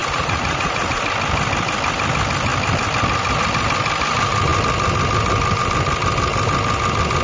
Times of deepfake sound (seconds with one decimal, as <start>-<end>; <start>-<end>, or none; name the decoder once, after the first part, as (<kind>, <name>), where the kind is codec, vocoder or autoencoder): 0.0-1.0 (vocoder, Vocos)